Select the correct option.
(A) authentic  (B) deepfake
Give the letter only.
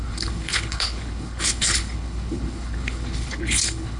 B